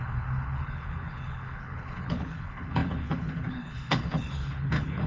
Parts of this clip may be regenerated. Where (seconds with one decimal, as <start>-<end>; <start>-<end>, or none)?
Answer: 0.0-5.1